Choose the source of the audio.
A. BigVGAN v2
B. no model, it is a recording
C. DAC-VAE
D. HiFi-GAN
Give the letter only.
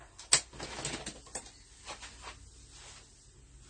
B